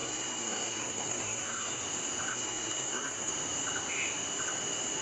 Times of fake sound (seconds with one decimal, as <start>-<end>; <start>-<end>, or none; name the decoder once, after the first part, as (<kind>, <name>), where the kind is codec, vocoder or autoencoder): 0.0-1.8 (codec, SNAC); 2.3-3.3